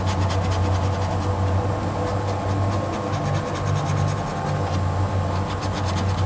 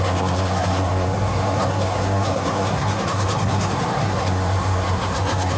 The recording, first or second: first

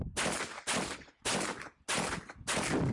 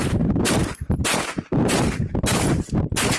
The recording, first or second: first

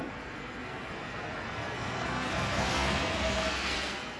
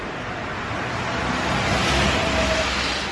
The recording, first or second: second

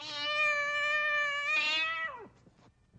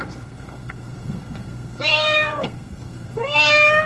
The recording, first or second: first